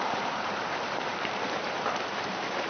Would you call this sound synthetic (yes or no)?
yes